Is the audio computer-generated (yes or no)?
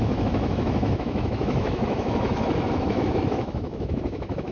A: yes